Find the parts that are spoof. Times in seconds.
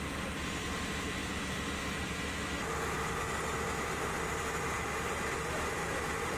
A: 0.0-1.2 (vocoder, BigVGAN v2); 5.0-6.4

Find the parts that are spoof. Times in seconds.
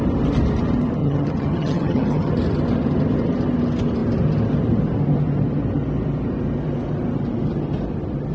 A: 1.0-2.3 (vocoder, HiFi-GAN)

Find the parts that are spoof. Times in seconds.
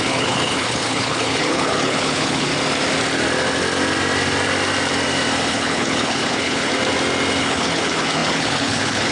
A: 0.0-2.5 (codec, HILCodec); 5.5-6.7; 7.4-9.1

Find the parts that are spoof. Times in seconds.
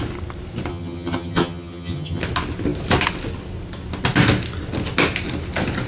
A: 0.7-2.2 (vocoder, HiFi-GAN)